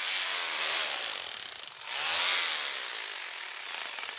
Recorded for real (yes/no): yes